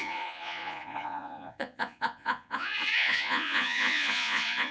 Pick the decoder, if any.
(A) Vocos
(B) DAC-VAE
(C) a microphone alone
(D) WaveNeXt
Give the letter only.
A